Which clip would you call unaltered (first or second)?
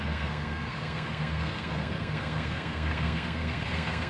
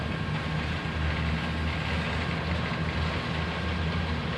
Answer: second